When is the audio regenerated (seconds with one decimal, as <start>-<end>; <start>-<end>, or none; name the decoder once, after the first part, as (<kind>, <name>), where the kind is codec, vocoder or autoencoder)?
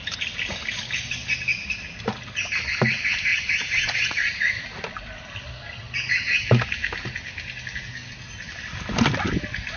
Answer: 3.3-4.6 (vocoder, Vocos)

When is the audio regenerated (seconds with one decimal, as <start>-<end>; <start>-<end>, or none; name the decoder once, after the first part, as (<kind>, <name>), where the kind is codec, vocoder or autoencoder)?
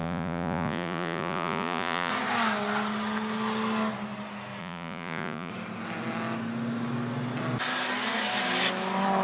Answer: 0.0-2.1 (vocoder, Vocos); 4.6-5.5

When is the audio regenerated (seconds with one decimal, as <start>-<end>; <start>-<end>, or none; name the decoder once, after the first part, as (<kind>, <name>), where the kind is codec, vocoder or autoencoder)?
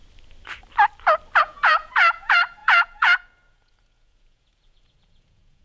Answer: 1.4-5.6 (vocoder, Vocos)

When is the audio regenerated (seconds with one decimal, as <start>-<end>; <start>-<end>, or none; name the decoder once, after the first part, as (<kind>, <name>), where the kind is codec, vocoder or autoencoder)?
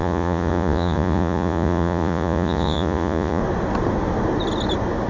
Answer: 0.0-3.4 (vocoder, Vocos)